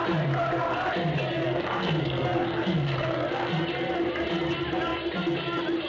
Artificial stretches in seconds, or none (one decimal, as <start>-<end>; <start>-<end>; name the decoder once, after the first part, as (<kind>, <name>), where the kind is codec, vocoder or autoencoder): 1.4-3.5 (codec, SNAC)